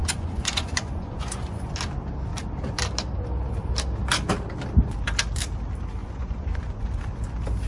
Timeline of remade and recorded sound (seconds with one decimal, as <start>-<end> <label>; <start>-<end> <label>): 0.0-1.7 remade; 1.7-6.0 recorded; 6.0-7.0 remade; 7.0-7.7 recorded